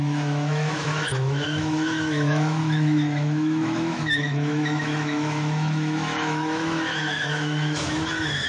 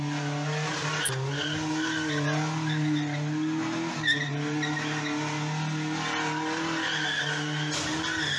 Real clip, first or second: second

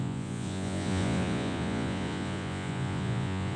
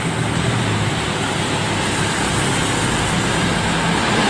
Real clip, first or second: second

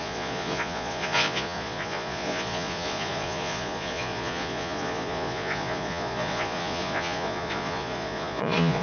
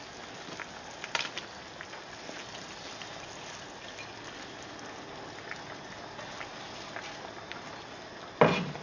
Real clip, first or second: second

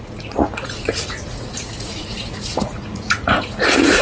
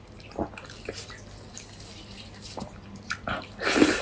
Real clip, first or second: second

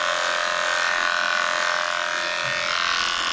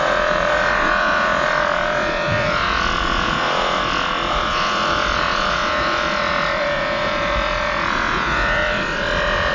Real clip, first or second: first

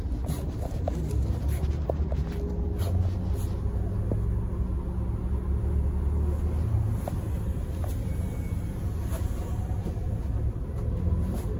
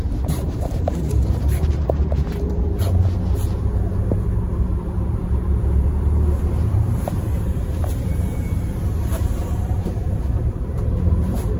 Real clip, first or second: first